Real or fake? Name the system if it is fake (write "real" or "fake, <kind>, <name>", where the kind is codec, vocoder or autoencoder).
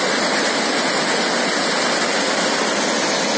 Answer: real